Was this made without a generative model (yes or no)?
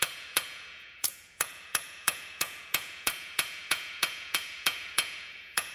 no